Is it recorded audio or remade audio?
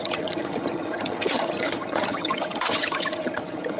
remade